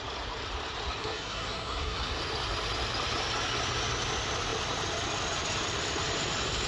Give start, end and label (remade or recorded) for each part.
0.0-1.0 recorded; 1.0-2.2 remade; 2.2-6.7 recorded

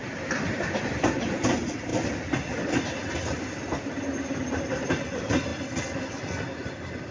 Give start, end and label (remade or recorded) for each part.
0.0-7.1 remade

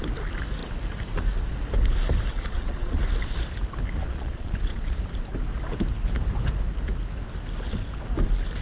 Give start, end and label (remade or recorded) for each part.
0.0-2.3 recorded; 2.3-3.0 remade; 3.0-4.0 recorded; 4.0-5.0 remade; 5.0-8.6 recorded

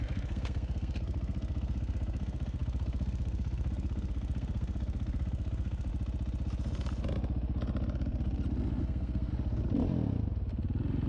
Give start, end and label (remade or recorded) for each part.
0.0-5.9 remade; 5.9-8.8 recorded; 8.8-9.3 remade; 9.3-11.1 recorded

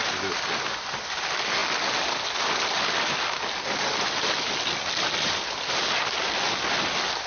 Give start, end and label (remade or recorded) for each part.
0.0-7.3 recorded